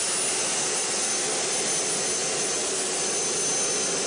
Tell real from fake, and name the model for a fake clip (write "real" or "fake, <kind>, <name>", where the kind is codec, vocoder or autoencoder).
real